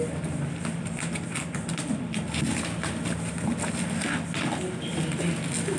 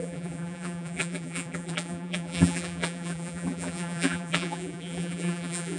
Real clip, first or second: first